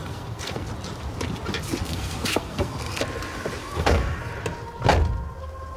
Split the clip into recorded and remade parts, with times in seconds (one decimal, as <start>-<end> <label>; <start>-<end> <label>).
0.0-0.7 remade; 0.7-1.8 recorded; 1.8-3.0 remade; 3.0-3.6 recorded; 3.6-4.2 remade; 4.2-5.8 recorded